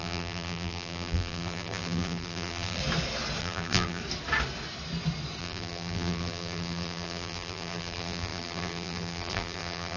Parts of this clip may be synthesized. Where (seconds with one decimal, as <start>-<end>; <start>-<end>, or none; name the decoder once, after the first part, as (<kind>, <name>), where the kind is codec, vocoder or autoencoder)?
0.0-2.8 (vocoder, BigVGAN v2); 3.4-4.0; 5.4-10.0